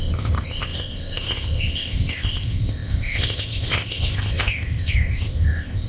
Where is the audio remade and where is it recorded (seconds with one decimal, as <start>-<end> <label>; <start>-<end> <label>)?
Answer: 0.0-5.9 remade